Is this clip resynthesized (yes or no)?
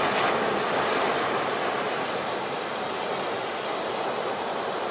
no